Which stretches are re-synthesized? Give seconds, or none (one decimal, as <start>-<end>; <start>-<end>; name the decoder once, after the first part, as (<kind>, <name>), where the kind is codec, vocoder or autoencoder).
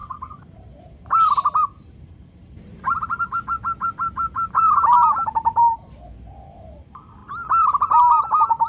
0.0-3.2 (vocoder, BigVGAN v2); 5.2-5.9